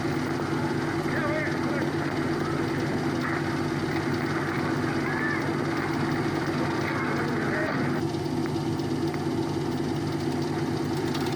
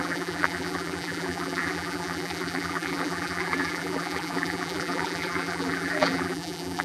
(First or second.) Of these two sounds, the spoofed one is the second